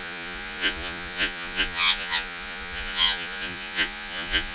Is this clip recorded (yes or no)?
no